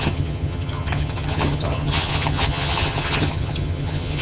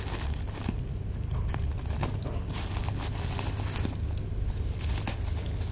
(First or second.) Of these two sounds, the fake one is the first